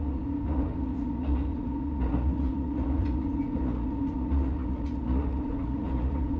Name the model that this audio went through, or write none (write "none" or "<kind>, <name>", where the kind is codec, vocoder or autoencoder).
vocoder, Vocos